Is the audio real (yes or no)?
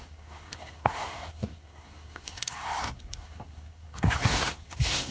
no